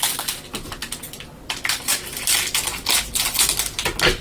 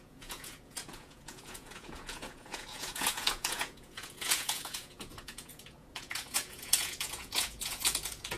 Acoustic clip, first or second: first